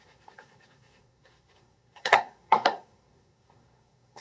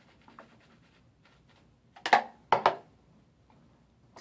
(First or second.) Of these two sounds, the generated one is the first